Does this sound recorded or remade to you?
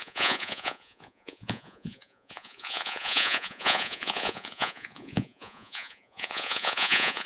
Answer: remade